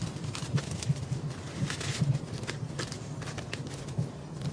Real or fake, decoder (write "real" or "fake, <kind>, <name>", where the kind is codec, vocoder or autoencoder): real